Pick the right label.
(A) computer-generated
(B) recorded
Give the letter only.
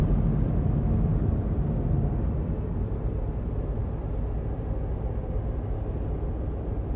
B